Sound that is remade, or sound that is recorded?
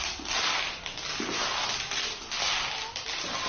recorded